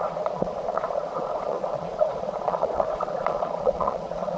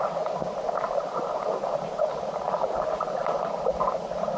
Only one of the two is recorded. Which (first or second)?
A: second